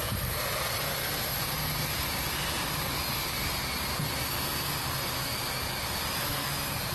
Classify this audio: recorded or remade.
recorded